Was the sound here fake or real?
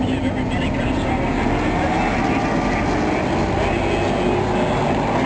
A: real